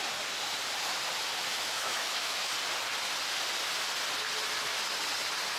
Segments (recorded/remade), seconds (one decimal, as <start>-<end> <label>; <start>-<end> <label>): 0.0-1.5 recorded; 1.5-2.5 remade; 2.5-5.6 recorded